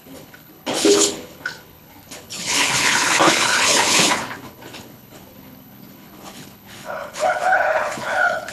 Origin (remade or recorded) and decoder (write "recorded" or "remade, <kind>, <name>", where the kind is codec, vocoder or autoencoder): remade, codec, HILCodec